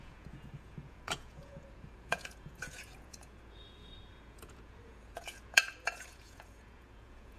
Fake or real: fake